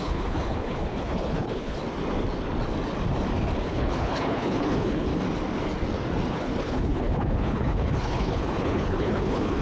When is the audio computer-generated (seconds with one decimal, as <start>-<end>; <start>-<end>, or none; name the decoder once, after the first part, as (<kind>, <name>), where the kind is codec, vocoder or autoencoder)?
0.0-1.8 (codec, HILCodec); 3.6-5.1; 6.3-9.6